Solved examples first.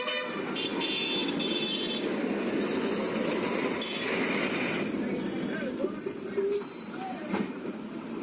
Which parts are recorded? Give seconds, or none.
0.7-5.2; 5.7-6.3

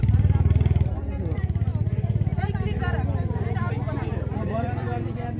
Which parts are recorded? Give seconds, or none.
1.7-4.5